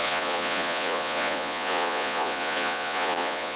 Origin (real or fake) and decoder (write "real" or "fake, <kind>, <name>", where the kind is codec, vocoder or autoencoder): fake, vocoder, Vocos